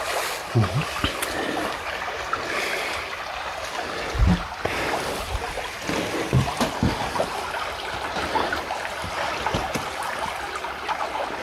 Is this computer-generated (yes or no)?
no